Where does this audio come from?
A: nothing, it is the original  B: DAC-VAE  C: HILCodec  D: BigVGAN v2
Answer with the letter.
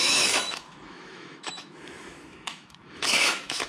B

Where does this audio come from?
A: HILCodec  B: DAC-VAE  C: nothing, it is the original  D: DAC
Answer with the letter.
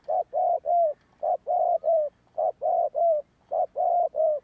C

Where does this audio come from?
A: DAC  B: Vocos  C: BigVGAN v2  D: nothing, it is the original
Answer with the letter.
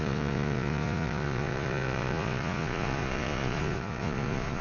B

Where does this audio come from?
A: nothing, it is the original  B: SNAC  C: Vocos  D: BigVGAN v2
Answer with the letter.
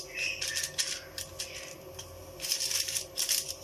A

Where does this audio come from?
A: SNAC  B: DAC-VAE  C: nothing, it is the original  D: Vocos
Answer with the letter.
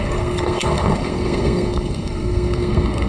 A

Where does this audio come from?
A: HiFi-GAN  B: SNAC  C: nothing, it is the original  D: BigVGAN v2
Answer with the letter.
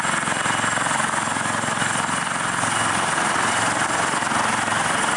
C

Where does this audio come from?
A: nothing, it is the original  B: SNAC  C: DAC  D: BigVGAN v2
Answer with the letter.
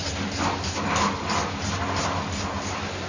A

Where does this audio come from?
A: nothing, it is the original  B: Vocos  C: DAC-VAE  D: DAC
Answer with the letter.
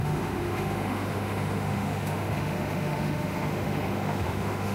C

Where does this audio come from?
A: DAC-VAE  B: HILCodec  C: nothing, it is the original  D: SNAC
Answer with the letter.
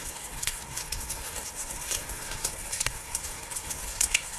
D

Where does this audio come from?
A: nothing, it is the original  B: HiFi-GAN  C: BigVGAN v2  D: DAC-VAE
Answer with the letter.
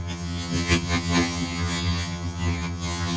B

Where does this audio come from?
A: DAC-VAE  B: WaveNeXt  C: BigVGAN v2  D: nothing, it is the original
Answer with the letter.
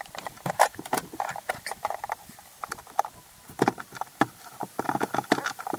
C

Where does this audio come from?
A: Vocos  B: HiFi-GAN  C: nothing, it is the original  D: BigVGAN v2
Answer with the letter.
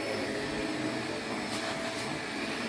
C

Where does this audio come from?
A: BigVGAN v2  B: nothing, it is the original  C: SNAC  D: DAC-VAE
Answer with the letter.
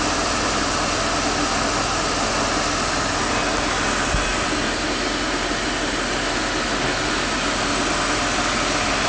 B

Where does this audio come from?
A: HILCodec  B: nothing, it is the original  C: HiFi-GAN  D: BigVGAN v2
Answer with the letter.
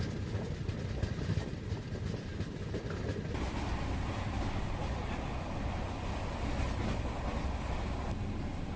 B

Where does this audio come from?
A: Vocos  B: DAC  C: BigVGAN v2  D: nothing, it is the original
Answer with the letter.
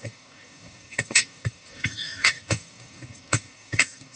B